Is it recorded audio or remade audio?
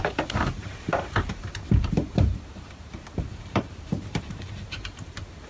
remade